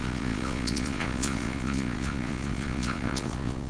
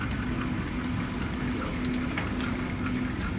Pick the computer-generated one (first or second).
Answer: first